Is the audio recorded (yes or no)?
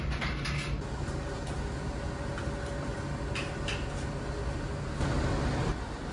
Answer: yes